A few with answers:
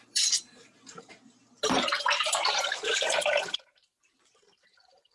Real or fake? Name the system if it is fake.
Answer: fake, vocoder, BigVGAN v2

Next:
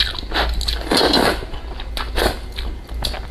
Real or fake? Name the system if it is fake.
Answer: real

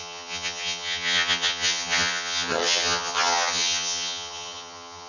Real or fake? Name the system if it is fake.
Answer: fake, vocoder, HiFi-GAN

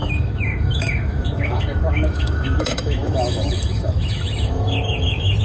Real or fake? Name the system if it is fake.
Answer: fake, autoencoder, DAC-VAE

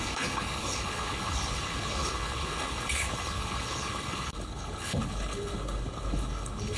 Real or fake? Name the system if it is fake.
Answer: fake, codec, HILCodec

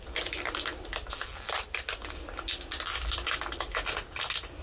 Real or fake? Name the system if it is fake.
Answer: real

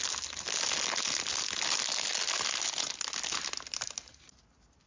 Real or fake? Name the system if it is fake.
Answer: real